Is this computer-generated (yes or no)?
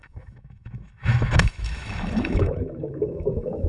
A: yes